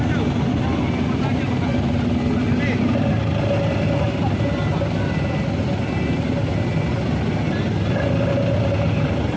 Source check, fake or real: real